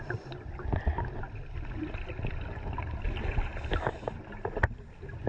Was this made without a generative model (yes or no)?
yes